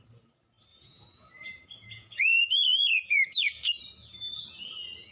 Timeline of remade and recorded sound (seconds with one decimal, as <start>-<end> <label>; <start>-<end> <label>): 0.0-0.7 recorded; 0.7-3.8 remade; 3.8-5.1 recorded